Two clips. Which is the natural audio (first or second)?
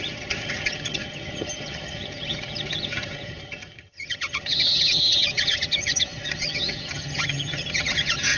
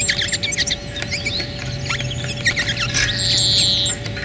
second